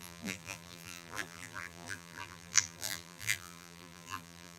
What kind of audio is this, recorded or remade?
remade